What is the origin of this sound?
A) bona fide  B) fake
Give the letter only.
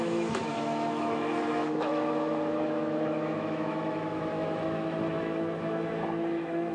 B